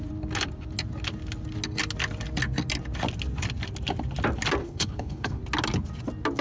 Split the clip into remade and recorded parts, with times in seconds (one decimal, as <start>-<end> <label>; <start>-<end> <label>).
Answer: 0.0-4.6 recorded; 4.6-5.4 remade; 5.4-6.4 recorded